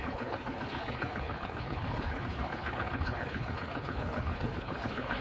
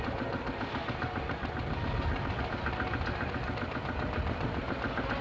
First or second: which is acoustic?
second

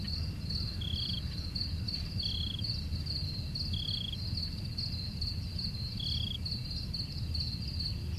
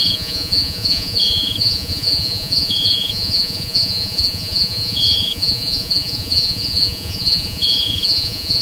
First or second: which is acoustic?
first